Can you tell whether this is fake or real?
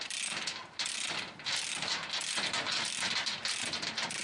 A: real